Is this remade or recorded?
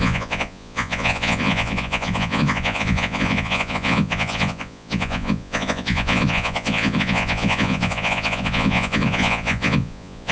remade